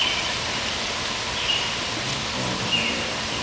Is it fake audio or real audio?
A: real